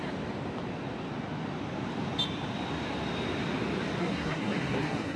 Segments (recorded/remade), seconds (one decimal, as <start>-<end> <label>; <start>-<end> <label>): 0.0-4.0 recorded; 4.0-5.2 remade

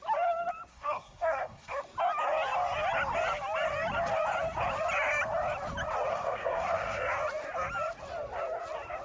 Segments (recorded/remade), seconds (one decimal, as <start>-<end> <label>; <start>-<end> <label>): 0.0-0.7 recorded; 0.7-1.8 remade; 1.8-6.1 recorded; 6.1-7.1 remade; 7.1-9.0 recorded

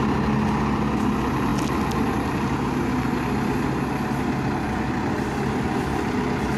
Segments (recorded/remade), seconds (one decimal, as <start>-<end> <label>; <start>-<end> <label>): 0.0-6.6 recorded

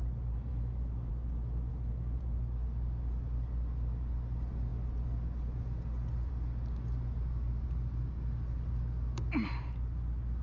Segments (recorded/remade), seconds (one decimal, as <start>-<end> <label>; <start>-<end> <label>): 0.0-0.5 recorded; 0.5-1.1 remade; 1.1-1.7 recorded; 1.7-2.2 remade; 2.2-10.4 recorded

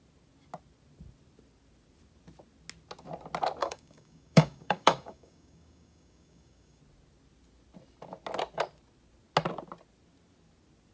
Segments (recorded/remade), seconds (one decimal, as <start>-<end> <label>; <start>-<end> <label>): 0.0-3.6 recorded; 3.6-6.8 remade; 6.8-10.9 recorded